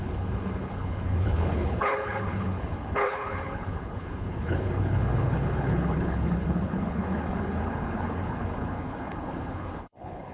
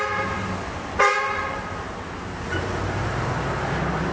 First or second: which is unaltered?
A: second